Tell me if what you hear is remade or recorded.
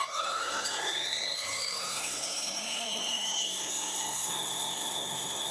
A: remade